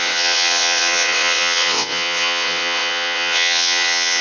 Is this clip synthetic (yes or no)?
yes